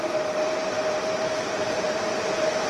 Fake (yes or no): no